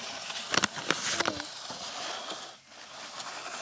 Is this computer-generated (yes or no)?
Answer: no